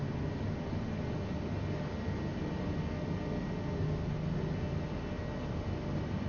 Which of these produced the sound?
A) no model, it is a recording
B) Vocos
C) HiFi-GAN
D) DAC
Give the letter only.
A